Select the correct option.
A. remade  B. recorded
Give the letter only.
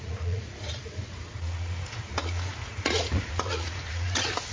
A